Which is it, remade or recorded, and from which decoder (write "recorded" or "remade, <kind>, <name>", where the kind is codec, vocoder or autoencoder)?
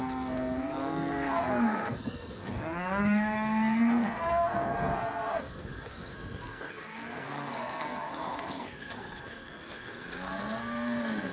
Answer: remade, codec, SNAC